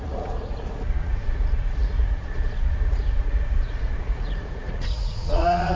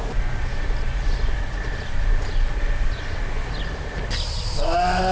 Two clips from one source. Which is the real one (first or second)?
second